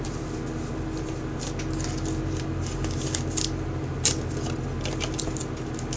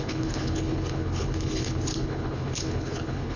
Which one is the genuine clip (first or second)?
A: first